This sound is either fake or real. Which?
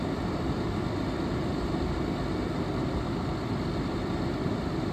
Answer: real